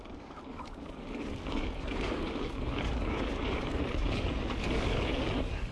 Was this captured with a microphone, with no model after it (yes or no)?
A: no